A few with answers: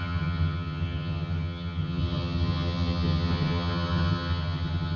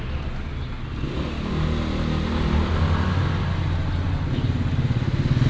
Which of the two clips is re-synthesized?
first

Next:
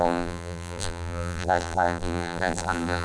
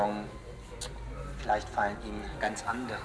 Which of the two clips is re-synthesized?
first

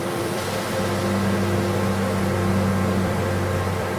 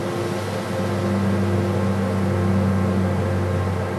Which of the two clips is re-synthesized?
first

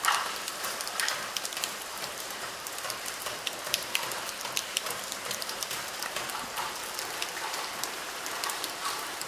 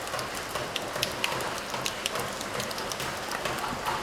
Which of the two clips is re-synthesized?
first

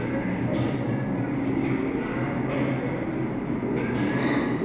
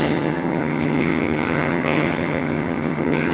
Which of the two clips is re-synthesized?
second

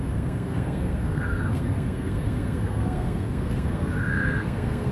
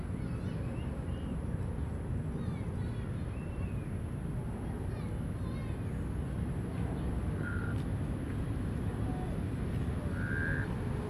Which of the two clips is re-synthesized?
first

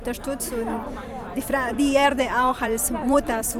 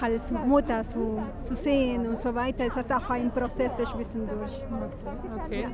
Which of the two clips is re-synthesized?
first